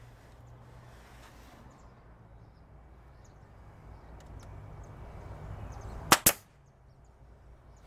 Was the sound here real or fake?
real